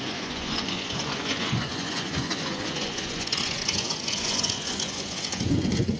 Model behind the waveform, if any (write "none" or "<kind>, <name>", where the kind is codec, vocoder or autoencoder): vocoder, Vocos